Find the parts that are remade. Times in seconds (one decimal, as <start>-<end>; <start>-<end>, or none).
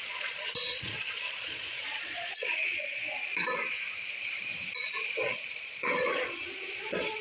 0.0-2.9; 5.5-7.2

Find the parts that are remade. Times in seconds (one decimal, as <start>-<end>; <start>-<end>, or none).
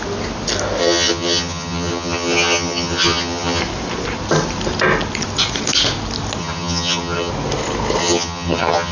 0.8-3.6; 6.4-7.3; 8.0-8.9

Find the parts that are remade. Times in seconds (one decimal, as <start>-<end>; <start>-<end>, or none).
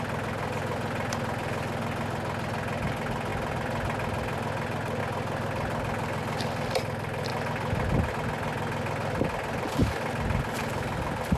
none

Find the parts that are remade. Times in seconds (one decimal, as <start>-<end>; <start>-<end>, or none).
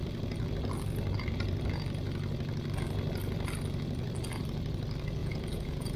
5.2-6.0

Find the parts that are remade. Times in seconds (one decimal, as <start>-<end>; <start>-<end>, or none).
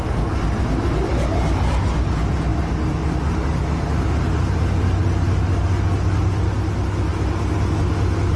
none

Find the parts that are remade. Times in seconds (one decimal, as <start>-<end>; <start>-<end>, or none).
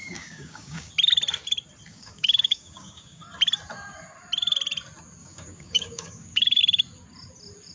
0.0-0.9; 1.9-3.2; 5.2-6.6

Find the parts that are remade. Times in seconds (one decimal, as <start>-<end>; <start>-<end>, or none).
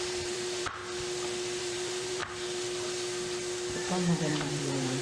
0.0-0.8; 1.6-2.2; 4.3-5.0